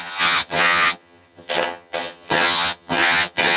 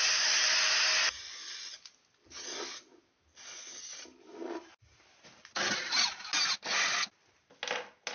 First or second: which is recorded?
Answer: second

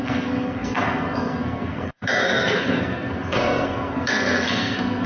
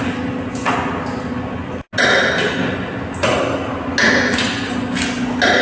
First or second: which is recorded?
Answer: second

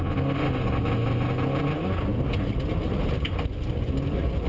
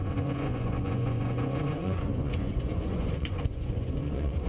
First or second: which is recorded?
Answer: first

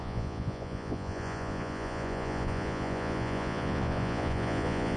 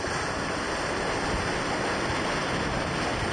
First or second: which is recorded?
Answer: second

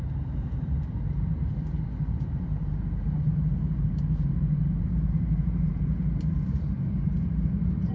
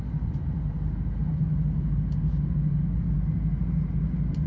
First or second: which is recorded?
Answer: second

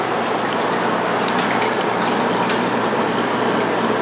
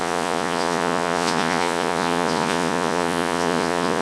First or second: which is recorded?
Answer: first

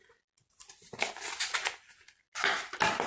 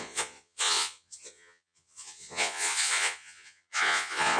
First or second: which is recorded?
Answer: first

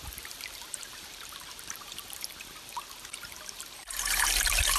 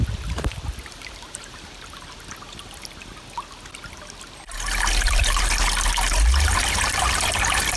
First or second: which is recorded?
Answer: second